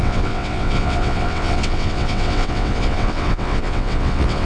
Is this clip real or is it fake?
fake